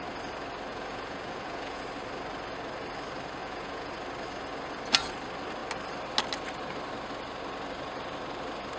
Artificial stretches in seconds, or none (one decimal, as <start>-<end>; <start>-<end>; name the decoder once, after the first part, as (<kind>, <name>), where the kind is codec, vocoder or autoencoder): 0.7-1.8 (vocoder, Vocos); 3.4-3.9